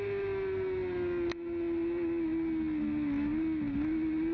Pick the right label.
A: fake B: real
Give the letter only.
B